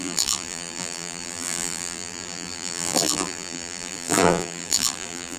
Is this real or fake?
fake